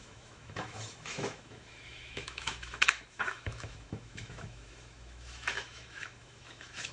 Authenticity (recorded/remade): remade